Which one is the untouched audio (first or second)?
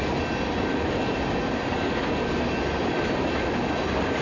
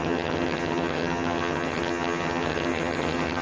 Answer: first